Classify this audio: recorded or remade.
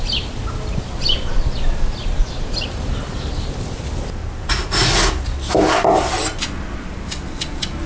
recorded